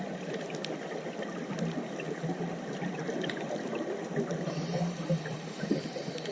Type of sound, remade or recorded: remade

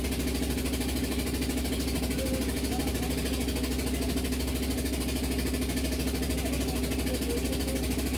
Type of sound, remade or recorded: recorded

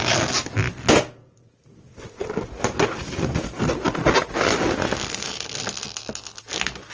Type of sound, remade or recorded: recorded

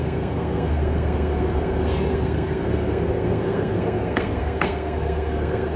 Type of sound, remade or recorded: remade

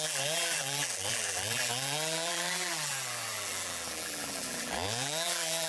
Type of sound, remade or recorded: remade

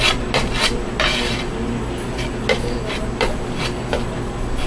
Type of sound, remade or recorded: recorded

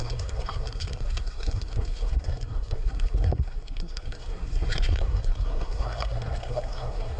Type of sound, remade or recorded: remade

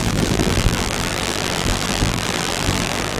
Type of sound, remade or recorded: remade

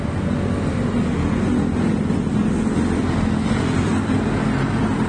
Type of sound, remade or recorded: recorded